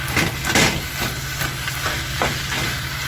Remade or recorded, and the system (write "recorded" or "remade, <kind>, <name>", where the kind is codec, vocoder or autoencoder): recorded